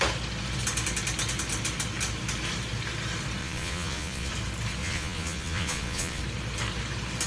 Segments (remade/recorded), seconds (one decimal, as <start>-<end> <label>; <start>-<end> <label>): 0.0-3.4 recorded; 3.4-4.3 remade; 4.3-4.8 recorded; 4.8-6.2 remade; 6.2-7.3 recorded